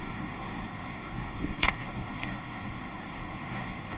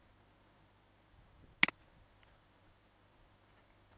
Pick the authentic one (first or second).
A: second